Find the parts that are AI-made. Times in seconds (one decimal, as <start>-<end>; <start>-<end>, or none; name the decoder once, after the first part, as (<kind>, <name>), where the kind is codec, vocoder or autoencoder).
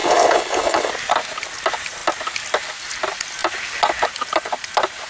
0.0-0.9 (codec, HILCodec)